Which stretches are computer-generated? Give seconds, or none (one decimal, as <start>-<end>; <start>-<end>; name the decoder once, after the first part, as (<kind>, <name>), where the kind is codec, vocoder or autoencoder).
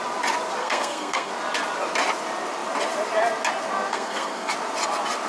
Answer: 0.6-1.3 (codec, SNAC); 3.9-4.5